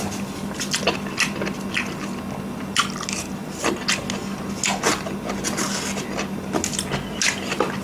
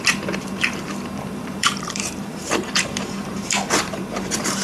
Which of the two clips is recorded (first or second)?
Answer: first